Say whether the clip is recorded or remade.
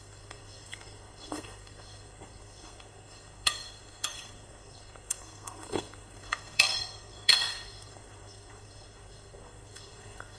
remade